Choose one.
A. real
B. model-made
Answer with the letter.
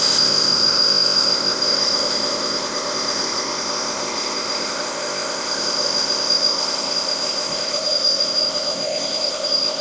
B